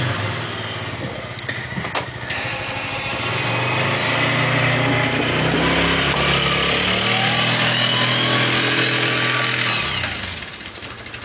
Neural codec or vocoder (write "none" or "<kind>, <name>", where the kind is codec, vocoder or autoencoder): none